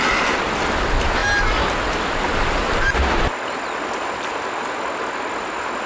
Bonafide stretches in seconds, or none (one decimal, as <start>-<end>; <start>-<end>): 0.0-5.9